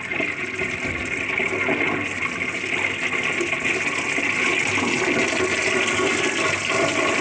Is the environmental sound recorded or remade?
recorded